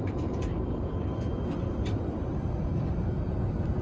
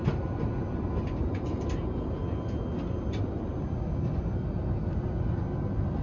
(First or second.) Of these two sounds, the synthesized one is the first